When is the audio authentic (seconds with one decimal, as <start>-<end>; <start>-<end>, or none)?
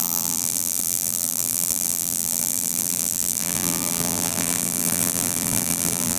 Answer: none